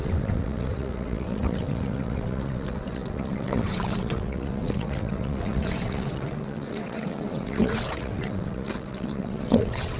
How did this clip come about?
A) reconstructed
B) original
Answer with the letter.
A